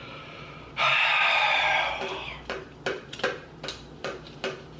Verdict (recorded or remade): recorded